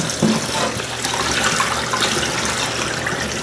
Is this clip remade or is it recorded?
recorded